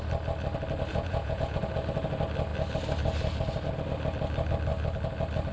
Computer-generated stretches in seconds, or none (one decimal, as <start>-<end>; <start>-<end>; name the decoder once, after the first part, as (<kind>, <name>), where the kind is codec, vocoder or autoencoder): 0.9-1.6 (vocoder, Vocos)